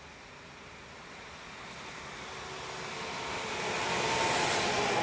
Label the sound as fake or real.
real